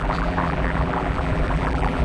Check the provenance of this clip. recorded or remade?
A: remade